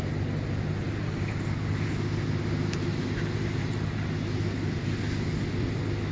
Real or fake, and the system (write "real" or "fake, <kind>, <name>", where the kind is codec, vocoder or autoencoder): real